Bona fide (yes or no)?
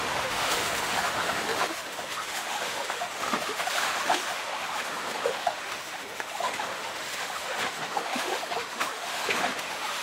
no